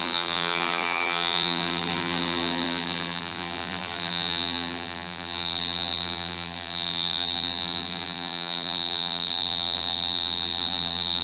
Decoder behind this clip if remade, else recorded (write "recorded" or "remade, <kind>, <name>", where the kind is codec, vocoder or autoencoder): remade, vocoder, BigVGAN v2